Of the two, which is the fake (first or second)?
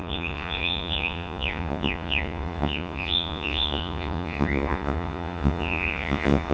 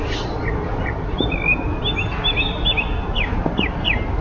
first